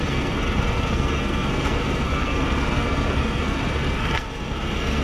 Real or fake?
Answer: fake